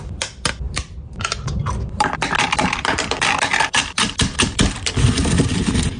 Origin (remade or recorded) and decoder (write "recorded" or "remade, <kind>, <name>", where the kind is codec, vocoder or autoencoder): remade, vocoder, BigVGAN v2